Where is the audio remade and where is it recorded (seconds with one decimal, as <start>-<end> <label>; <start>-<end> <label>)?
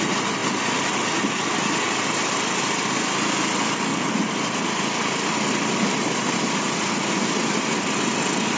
0.0-8.6 recorded